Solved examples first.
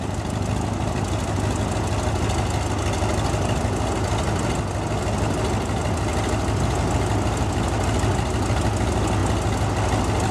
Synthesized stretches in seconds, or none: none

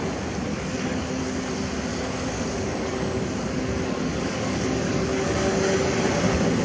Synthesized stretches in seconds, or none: 0.5-1.2 (codec, DAC); 1.9-5.9

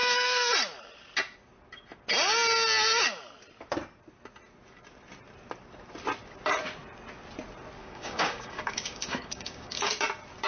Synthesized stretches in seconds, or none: 0.0-0.5 (codec, DAC); 7.8-9.9